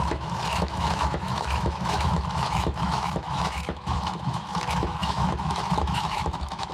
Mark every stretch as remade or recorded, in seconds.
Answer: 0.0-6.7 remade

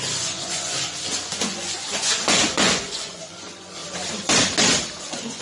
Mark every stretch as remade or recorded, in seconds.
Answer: 0.0-3.8 remade; 3.8-5.0 recorded; 5.0-5.4 remade

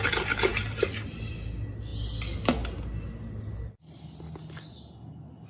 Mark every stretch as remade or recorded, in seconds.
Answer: 0.0-5.5 recorded

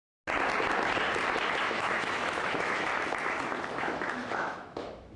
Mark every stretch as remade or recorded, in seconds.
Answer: 0.0-1.6 recorded; 1.6-2.9 remade; 2.9-3.8 recorded; 3.8-5.2 remade

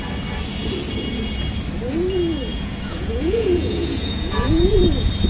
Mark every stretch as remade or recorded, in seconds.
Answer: 0.0-2.5 recorded; 2.5-4.8 remade; 4.8-5.3 recorded